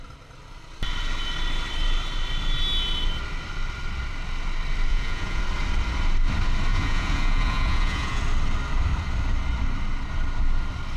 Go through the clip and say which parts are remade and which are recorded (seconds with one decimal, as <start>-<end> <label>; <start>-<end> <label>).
0.0-4.9 recorded; 4.9-5.4 remade; 5.4-6.7 recorded; 6.7-8.2 remade; 8.2-11.0 recorded